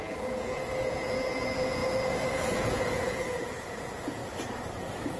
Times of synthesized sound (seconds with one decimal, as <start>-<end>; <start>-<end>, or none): 0.0-4.2